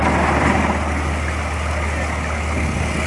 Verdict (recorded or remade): recorded